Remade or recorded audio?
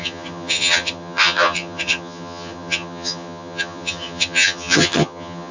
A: remade